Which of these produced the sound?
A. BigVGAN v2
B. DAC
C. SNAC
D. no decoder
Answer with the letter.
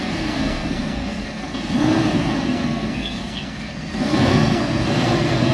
C